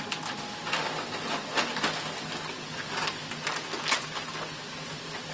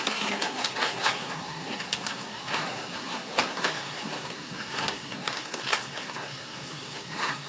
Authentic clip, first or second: first